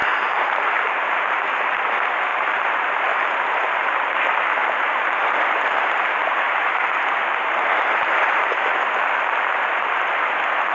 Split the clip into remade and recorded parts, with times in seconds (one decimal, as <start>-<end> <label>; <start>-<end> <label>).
0.0-1.5 remade; 1.5-2.3 recorded; 2.3-3.0 remade; 3.0-4.3 recorded; 4.3-8.7 remade; 8.7-10.7 recorded